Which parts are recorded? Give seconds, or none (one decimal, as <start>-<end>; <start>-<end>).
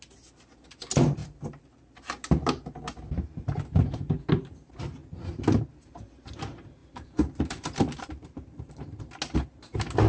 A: 0.0-1.2; 2.2-5.0; 5.6-6.8; 9.0-10.1